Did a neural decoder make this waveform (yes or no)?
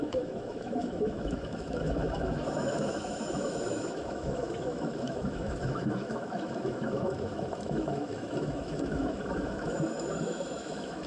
yes